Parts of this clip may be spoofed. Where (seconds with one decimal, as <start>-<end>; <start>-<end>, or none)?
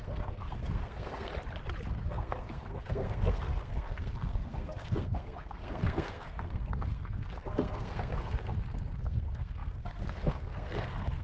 0.0-1.3; 1.9-11.2